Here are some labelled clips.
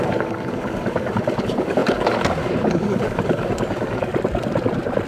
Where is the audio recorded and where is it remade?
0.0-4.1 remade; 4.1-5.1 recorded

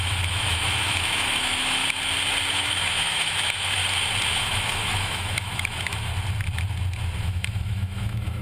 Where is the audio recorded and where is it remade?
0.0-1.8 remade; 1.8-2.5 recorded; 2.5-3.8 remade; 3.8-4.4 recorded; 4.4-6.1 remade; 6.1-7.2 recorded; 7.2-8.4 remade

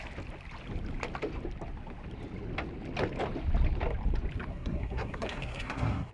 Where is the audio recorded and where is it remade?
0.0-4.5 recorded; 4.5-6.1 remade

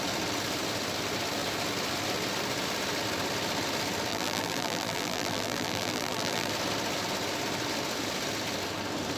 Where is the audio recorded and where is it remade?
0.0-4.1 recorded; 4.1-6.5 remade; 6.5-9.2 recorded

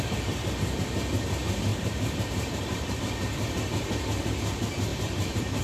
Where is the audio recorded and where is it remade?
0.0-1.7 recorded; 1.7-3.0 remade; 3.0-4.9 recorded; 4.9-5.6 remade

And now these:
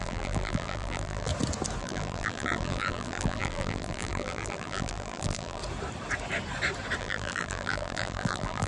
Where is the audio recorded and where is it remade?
0.0-1.3 remade; 1.3-1.8 recorded; 1.8-5.6 remade; 5.6-7.0 recorded; 7.0-8.7 remade

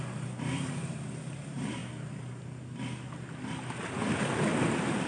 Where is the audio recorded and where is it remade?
0.0-5.1 recorded